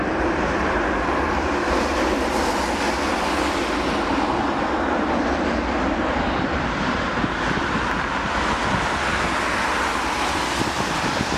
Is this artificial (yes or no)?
no